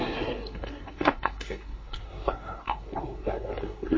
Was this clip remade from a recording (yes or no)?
yes